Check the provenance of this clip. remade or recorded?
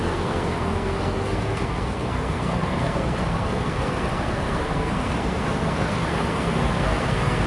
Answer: remade